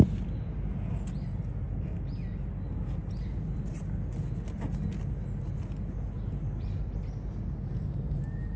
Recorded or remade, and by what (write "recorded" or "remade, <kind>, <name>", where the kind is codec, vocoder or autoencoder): recorded